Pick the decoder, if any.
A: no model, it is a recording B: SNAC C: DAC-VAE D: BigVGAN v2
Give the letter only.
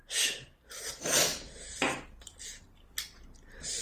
A